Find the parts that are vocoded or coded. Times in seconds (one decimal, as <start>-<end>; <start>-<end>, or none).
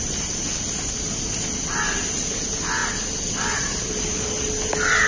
none